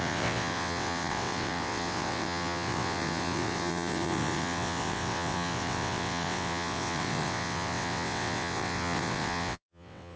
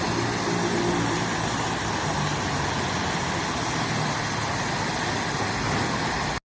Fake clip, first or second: first